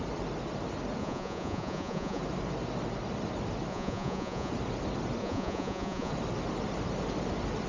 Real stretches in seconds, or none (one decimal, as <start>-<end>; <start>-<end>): 0.0-1.0; 2.2-3.7; 4.5-5.2; 6.1-7.7